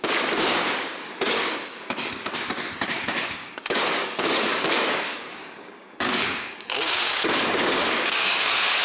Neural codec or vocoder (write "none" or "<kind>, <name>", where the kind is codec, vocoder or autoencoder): codec, DAC